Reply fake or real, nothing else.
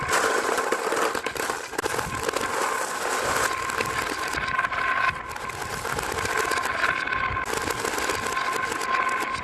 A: real